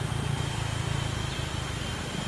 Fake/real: real